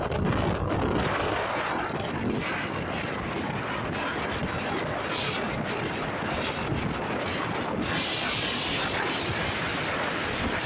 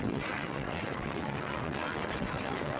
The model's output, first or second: second